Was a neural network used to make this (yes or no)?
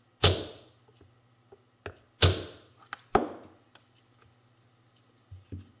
no